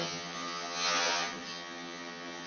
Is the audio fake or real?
fake